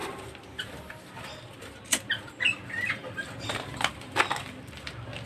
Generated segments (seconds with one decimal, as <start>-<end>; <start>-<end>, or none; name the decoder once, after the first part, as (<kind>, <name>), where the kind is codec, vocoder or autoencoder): none